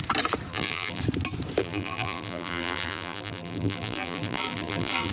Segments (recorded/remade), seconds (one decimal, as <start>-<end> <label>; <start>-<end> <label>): 0.0-0.5 recorded; 0.5-1.0 remade; 1.0-1.6 recorded; 1.6-5.1 remade